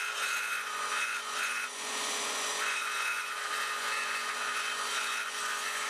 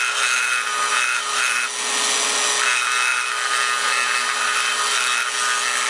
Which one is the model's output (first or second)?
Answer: first